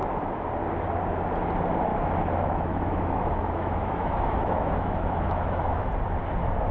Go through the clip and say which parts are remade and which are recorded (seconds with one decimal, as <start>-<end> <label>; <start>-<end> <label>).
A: 0.0-1.9 recorded; 1.9-5.9 remade; 5.9-6.7 recorded